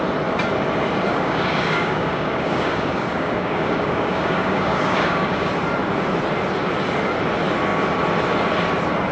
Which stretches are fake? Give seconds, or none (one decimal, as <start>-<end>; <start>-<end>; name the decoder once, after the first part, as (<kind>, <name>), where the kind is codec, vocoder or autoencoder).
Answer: 1.1-5.5 (codec, DAC)

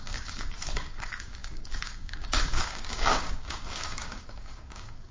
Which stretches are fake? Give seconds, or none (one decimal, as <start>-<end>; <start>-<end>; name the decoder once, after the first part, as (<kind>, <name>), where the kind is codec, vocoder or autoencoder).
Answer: 0.0-5.1 (codec, DAC)

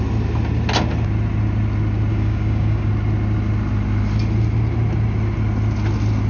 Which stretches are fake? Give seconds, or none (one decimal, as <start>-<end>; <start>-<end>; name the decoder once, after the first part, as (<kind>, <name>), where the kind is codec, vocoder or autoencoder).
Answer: 2.1-2.9 (codec, DAC)

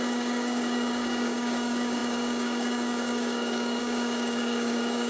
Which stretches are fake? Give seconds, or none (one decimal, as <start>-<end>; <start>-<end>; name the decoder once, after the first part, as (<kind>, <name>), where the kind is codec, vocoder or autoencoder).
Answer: 0.0-5.1 (codec, DAC)

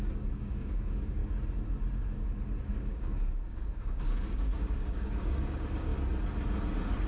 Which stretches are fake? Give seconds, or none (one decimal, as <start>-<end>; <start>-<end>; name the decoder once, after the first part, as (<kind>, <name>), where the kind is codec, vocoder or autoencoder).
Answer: 0.0-1.2 (codec, DAC); 2.7-5.9

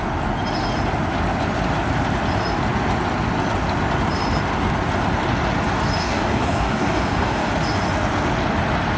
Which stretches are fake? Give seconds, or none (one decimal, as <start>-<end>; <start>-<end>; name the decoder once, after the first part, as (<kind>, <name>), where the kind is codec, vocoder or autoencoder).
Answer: 6.0-7.5 (codec, DAC)

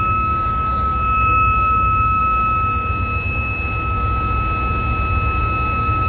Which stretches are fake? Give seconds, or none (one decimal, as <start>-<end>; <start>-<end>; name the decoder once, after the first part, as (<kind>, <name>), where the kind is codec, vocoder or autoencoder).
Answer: 0.0-2.2 (codec, DAC); 5.4-6.1